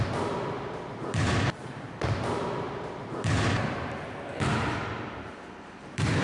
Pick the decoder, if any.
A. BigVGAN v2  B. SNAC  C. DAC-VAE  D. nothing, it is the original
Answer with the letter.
A